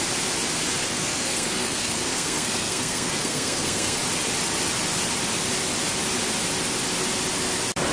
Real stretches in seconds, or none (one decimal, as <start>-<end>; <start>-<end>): 0.0-0.8; 4.0-7.9